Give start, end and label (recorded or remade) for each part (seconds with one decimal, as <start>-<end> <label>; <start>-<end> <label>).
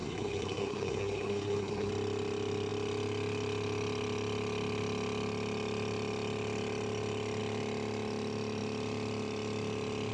0.0-1.9 remade; 1.9-10.1 recorded